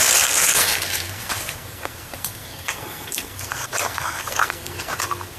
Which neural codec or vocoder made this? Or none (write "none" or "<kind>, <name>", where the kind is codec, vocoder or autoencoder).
codec, SNAC